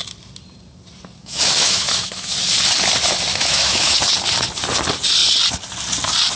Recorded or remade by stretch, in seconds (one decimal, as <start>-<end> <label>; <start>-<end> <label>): 0.0-1.2 recorded; 1.2-2.3 remade; 2.3-3.3 recorded; 3.3-4.0 remade; 4.0-6.4 recorded